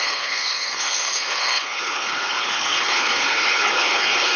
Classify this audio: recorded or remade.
remade